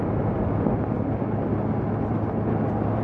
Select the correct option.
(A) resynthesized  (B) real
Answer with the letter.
B